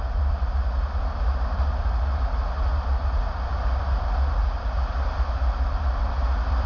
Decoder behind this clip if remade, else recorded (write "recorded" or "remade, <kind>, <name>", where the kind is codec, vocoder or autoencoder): recorded